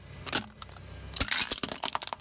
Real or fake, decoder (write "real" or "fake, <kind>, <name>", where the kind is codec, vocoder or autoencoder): real